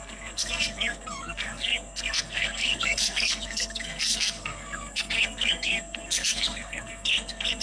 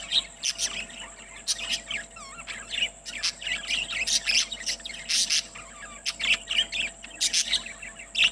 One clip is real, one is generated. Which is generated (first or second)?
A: first